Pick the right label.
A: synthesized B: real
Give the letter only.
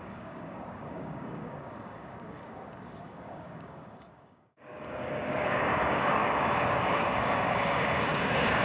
A